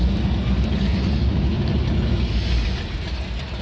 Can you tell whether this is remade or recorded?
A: recorded